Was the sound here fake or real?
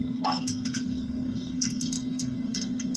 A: fake